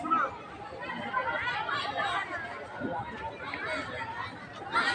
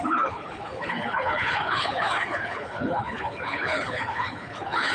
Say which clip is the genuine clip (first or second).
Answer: first